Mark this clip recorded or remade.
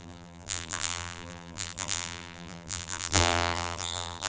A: remade